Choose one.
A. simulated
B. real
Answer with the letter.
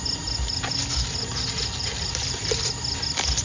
B